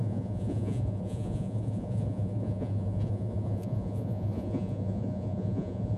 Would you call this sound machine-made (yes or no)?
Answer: yes